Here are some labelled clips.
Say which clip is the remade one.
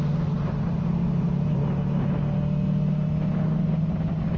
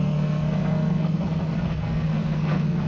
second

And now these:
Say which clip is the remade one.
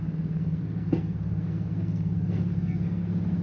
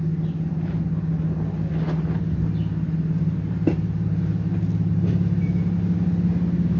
first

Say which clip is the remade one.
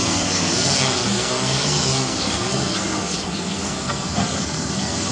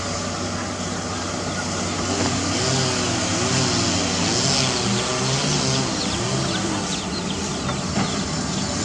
first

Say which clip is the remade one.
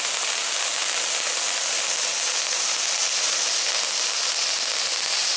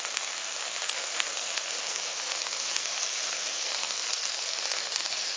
second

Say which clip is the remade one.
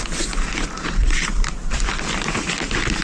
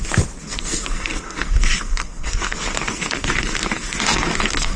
second